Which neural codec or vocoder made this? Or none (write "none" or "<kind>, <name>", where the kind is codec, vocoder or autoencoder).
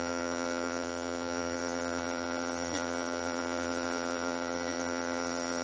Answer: vocoder, BigVGAN v2